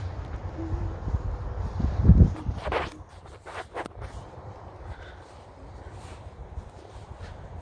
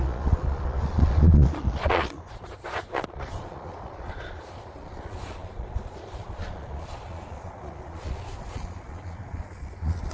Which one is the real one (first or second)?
first